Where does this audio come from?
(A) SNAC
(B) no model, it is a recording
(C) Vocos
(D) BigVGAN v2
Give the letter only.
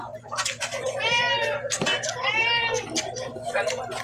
B